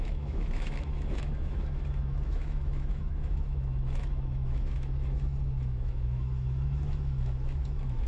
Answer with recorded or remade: remade